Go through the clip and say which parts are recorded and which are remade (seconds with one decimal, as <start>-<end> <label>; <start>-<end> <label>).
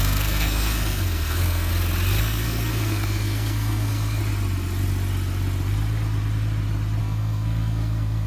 0.0-1.7 remade; 1.7-2.2 recorded; 2.2-4.2 remade; 4.2-7.0 recorded; 7.0-8.3 remade